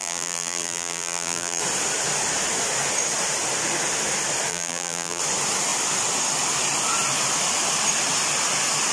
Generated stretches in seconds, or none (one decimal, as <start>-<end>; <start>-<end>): 0.0-1.6; 4.5-5.2